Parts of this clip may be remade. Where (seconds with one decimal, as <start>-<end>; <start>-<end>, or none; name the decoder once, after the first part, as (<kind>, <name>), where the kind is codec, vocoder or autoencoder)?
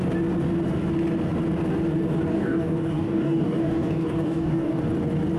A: 2.3-4.8 (codec, DAC)